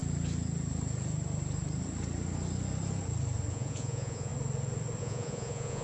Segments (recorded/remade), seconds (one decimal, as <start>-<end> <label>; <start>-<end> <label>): 0.0-3.5 recorded; 3.5-4.3 remade; 4.3-5.0 recorded; 5.0-5.8 remade